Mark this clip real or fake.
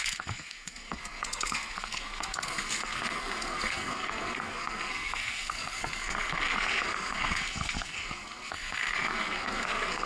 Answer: fake